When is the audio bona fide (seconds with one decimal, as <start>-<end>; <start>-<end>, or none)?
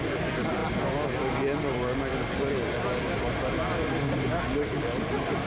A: 0.0-5.5